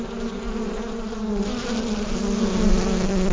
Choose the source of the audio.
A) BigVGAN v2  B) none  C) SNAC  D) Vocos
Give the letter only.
B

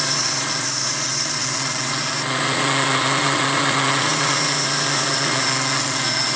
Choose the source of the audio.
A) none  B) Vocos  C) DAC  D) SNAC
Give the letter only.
B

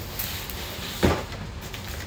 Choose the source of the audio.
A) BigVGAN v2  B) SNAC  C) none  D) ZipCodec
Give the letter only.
C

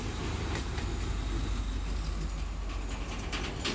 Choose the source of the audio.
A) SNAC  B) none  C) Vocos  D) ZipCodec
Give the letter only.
B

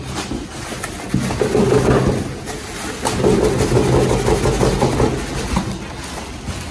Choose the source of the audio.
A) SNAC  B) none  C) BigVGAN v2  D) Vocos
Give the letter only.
B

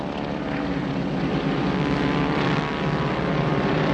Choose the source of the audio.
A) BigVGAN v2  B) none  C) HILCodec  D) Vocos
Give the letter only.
A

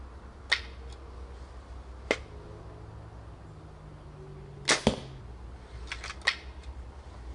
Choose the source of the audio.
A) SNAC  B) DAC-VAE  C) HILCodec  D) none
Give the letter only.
D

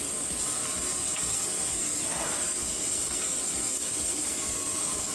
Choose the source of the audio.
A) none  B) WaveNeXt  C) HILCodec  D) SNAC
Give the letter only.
D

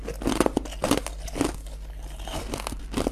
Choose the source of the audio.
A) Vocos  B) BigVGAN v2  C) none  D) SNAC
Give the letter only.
C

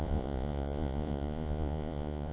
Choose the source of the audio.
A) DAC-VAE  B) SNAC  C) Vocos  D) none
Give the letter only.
C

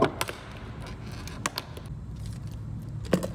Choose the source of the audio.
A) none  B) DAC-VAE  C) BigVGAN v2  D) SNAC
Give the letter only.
A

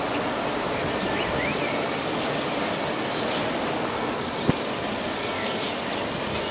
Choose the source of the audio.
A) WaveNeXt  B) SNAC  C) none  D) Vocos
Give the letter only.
C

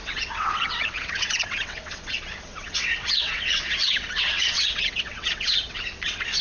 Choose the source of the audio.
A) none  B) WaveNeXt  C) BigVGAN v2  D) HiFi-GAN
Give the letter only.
B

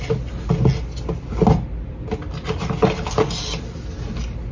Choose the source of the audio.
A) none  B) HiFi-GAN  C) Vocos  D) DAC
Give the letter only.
A